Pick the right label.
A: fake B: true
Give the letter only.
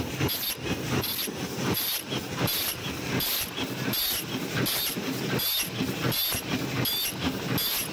B